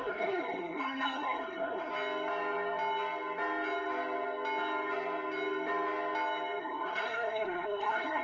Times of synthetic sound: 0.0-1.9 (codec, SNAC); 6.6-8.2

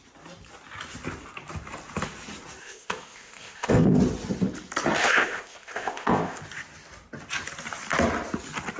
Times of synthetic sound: 2.6-4.0 (codec, ZipCodec); 5.0-6.4

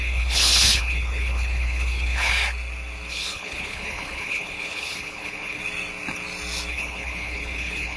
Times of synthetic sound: 0.0-2.3 (codec, HILCodec); 3.1-5.6; 6.7-8.0

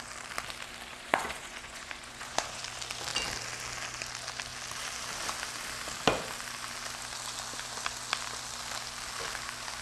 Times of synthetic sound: 0.9-2.6 (vocoder, Vocos)

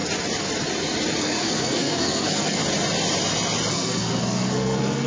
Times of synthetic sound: 1.2-2.6 (codec, SNAC); 3.7-5.1

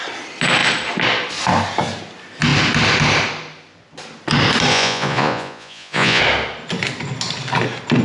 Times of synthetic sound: 4.7-6.2 (vocoder, Vocos)

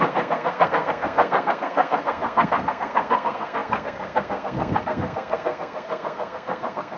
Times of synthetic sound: 0.0-7.0 (codec, SNAC)